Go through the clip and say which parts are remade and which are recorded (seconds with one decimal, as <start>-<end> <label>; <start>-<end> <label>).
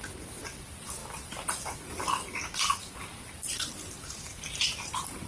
0.0-5.3 remade